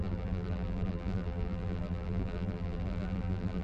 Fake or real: fake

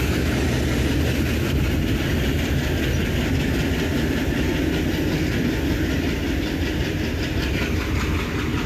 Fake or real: real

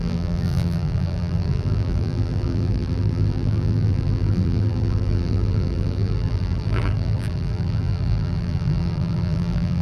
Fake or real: fake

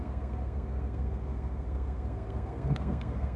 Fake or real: fake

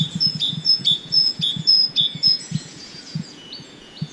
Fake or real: fake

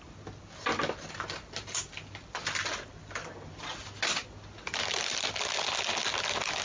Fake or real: real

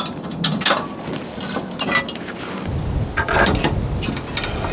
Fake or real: real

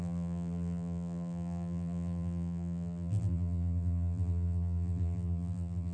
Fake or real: fake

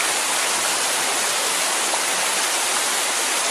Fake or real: fake